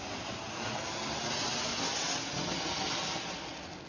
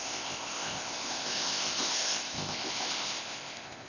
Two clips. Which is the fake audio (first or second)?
second